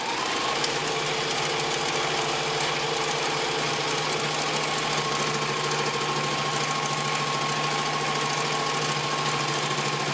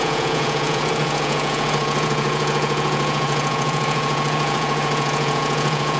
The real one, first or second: first